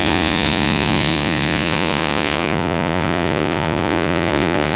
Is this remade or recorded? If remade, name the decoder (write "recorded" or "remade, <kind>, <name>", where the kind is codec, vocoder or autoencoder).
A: remade, vocoder, Vocos